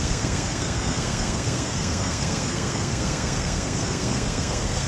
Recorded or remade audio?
remade